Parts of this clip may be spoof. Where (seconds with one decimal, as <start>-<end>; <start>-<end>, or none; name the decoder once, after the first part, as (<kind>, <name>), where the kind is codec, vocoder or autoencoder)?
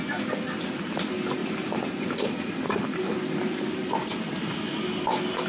1.4-3.8 (vocoder, BigVGAN v2)